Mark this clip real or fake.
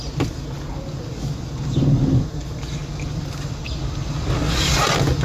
real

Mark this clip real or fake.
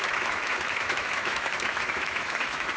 fake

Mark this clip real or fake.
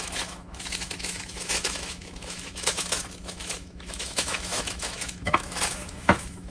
fake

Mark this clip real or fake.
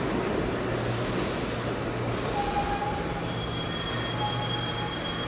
real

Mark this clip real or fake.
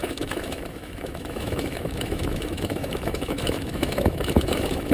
fake